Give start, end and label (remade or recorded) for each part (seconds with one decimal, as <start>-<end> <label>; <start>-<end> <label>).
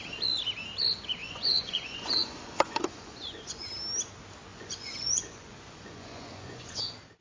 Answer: 0.0-1.2 recorded; 1.2-3.7 remade; 3.7-4.5 recorded; 4.5-6.8 remade; 6.8-7.2 recorded